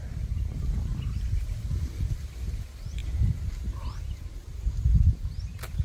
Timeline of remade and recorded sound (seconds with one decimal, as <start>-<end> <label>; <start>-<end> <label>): 0.0-5.8 remade